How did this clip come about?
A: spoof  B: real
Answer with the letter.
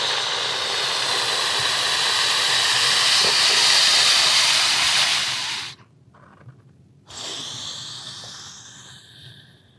A